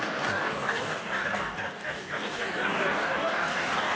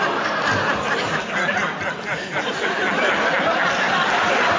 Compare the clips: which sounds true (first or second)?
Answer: second